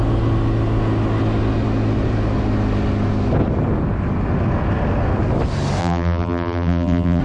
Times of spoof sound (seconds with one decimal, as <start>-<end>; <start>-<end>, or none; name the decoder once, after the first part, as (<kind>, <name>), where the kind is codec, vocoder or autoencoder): 5.8-7.2 (vocoder, BigVGAN v2)